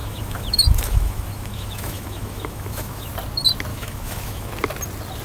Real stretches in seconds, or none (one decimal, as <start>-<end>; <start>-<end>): 3.1-3.7; 4.5-5.2